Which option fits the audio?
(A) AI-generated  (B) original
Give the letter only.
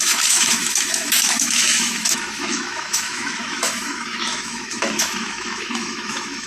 A